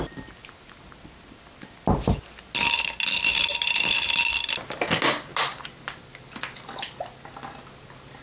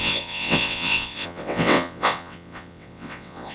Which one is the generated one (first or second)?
second